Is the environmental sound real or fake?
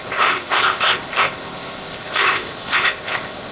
fake